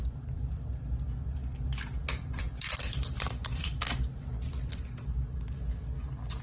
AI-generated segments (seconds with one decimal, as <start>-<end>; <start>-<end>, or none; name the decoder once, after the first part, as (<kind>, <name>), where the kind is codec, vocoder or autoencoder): 0.0-0.6 (vocoder, BigVGAN v2); 1.5-4.7